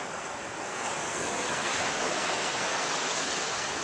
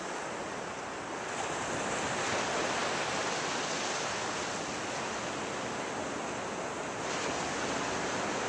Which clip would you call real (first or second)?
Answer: second